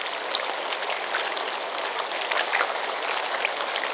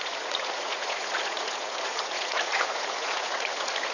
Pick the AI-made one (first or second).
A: second